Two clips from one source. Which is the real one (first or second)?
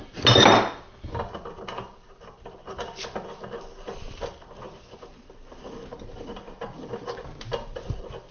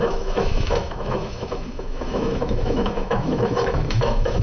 first